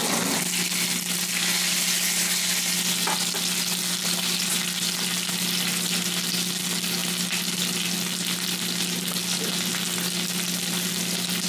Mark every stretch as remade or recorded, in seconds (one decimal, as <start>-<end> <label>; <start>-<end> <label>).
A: 0.0-11.5 recorded